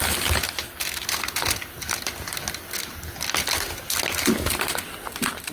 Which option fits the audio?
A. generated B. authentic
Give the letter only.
B